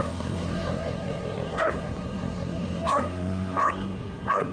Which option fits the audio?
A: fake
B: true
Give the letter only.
A